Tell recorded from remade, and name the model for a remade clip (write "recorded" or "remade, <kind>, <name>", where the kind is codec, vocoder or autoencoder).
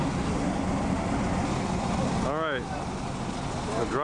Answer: recorded